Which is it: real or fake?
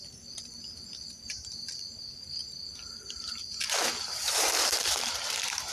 fake